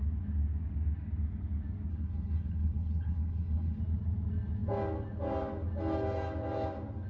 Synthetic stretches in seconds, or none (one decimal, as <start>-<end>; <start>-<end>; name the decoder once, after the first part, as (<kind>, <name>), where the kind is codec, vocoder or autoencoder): 1.9-3.8 (codec, HILCodec)